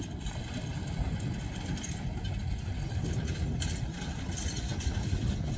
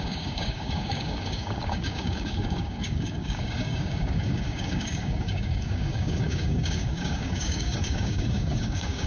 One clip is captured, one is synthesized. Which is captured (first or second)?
first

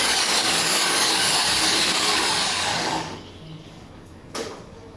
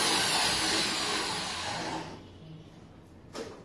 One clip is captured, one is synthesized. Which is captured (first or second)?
second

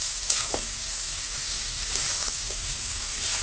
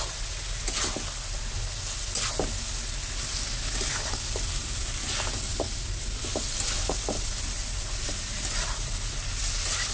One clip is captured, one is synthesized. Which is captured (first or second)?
second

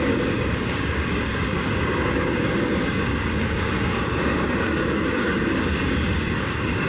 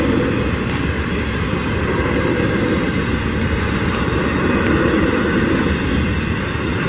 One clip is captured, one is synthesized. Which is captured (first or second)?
second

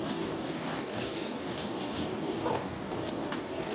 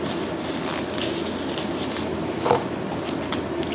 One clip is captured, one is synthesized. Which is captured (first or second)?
second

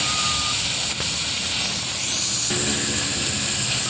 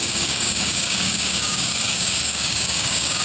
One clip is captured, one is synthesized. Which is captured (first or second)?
first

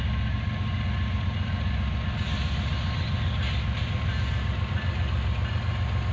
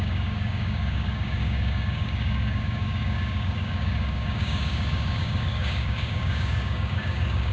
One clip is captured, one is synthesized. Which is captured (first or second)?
first